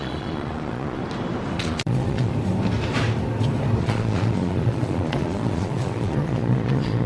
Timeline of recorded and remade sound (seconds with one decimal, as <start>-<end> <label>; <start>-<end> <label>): 0.0-1.0 remade; 1.0-1.6 recorded; 1.6-2.3 remade; 2.3-3.8 recorded; 3.8-7.1 remade

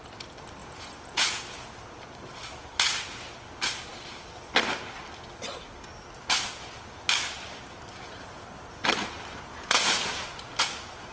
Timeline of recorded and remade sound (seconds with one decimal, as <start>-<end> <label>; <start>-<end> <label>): 0.0-0.6 recorded; 0.6-1.6 remade; 1.6-9.5 recorded; 9.5-10.3 remade; 10.3-11.1 recorded